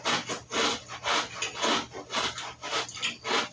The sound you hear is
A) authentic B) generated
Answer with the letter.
A